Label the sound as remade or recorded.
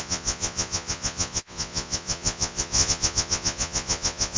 remade